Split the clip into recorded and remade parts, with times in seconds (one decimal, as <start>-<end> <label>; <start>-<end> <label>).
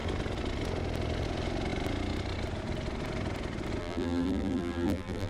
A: 0.0-3.8 recorded; 3.8-5.3 remade